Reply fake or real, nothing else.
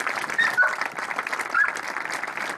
real